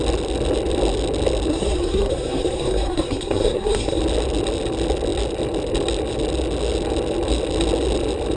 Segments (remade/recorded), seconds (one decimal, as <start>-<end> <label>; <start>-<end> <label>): 0.0-1.5 recorded; 1.5-4.0 remade; 4.0-8.4 recorded